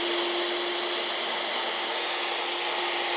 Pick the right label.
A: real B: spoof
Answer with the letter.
A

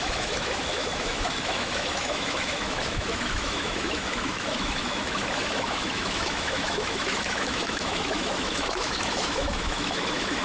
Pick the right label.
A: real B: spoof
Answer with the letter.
B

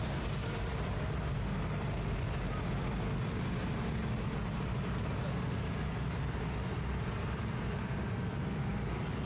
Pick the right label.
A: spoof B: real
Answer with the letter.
B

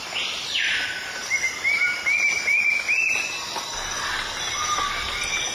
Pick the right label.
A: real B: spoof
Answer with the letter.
A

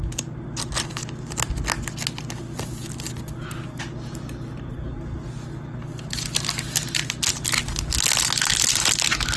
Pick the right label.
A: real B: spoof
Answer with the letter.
A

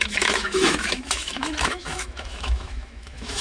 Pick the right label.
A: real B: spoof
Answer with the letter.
B